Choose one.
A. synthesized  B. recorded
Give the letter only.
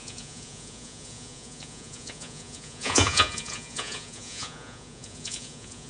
A